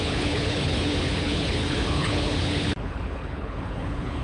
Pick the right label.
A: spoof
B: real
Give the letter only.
A